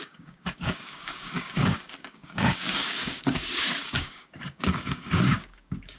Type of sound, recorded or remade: remade